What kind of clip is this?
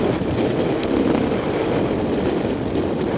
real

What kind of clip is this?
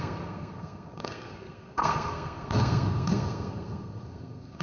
fake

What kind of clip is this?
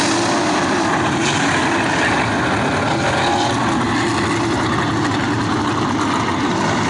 real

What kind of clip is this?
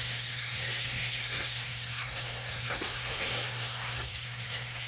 fake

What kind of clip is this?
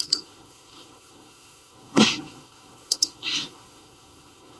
fake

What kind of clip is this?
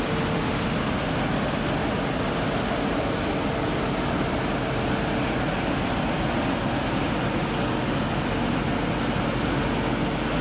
real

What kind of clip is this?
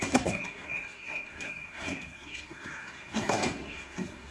fake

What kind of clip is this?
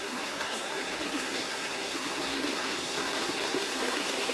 fake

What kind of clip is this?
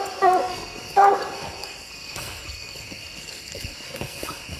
fake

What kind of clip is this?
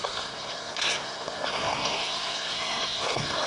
fake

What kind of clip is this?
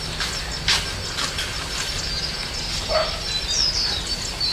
real